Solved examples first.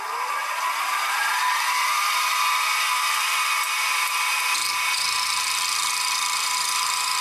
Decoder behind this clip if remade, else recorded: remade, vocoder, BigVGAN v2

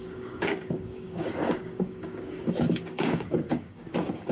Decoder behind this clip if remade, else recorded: remade, codec, DAC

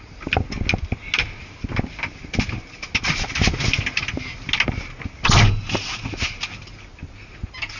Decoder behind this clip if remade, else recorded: recorded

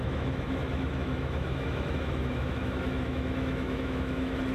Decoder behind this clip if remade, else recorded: remade, autoencoder, DAC-VAE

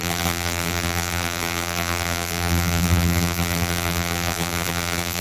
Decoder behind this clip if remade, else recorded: remade, vocoder, BigVGAN v2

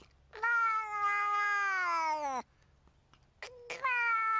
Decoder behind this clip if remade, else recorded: recorded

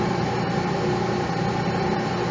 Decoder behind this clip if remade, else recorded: recorded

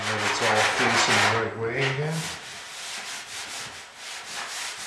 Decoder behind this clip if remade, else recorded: recorded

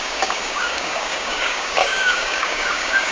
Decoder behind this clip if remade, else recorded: remade, codec, DAC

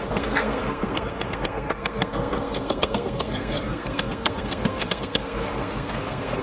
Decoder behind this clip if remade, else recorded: remade, codec, SNAC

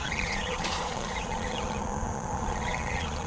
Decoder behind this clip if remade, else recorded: remade, vocoder, Vocos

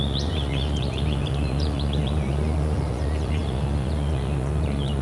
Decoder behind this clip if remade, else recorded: remade, vocoder, Vocos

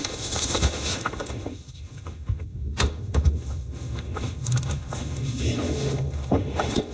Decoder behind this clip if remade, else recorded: remade, autoencoder, DAC-VAE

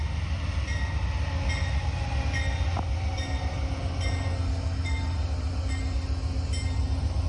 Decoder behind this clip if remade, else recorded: recorded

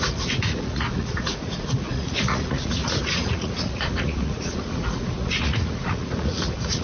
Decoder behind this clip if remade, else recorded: remade, vocoder, Vocos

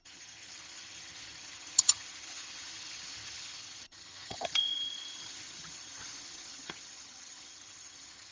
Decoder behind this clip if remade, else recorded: remade, vocoder, HiFi-GAN